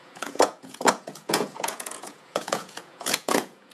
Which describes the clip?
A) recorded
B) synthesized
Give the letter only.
B